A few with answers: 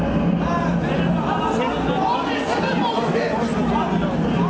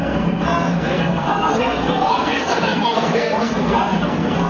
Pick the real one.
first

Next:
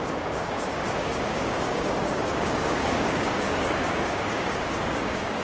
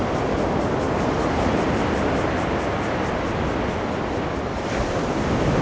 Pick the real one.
second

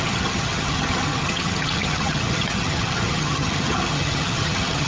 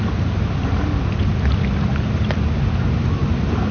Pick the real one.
second